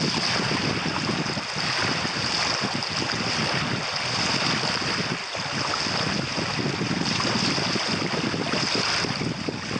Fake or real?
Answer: real